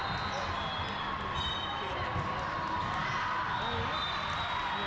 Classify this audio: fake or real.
real